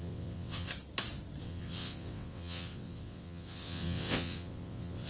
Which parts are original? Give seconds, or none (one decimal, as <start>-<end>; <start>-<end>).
0.7-1.4